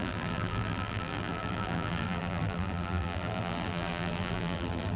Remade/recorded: remade